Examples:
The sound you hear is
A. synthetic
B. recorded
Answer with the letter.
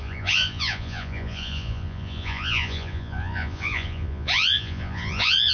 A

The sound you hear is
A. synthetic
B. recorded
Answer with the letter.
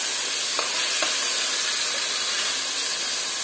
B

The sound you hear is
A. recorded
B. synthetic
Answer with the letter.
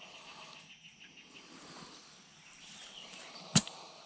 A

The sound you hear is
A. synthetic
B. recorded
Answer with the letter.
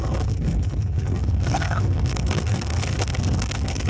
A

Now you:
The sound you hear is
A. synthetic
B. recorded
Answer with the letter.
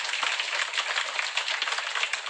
B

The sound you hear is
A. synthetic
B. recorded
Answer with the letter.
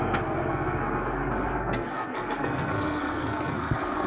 A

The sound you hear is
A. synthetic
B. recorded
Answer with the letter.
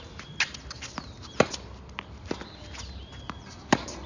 B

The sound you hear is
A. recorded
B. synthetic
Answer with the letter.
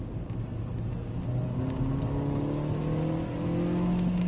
A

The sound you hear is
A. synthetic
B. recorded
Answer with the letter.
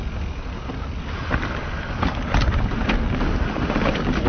B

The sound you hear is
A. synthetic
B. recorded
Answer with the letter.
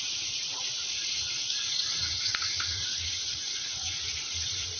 A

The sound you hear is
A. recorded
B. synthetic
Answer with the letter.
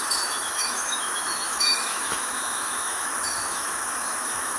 B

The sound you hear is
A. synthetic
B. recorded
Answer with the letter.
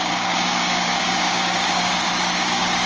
A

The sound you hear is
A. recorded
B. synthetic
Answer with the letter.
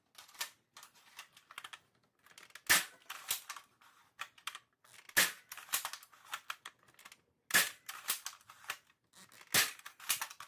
A